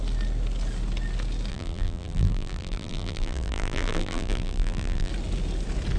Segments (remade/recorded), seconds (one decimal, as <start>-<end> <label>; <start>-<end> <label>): 0.0-1.5 recorded; 1.5-5.1 remade; 5.1-6.0 recorded